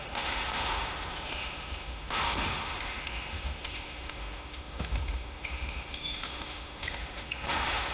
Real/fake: fake